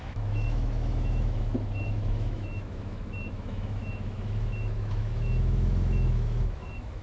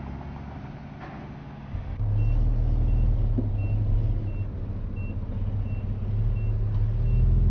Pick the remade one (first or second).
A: first